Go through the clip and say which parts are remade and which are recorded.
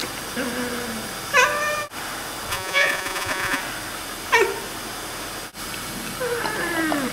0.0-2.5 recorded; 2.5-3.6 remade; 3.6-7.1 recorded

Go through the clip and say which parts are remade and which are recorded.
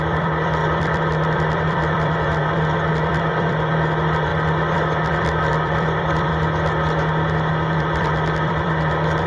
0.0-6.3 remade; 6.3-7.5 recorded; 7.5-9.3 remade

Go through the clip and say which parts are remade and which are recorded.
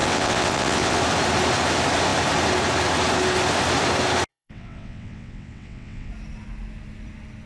0.0-1.0 remade; 1.0-4.3 recorded; 4.3-6.1 remade; 6.1-7.5 recorded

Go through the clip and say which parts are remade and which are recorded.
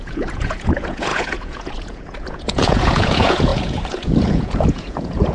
0.0-5.3 remade